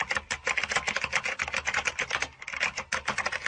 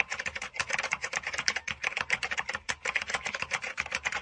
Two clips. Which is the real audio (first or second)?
first